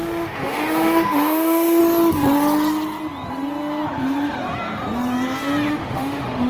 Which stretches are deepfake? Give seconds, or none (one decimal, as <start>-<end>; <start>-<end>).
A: 0.0-1.8; 5.7-6.5